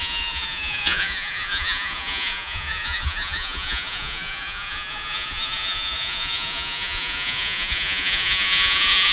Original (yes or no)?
no